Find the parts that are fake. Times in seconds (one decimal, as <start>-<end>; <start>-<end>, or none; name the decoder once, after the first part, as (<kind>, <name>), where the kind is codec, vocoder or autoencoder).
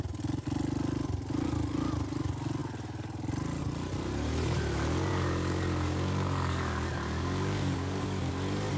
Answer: 5.1-8.3 (codec, DAC)